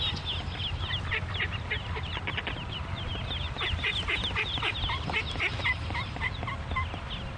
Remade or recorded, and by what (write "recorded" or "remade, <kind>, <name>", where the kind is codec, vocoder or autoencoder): recorded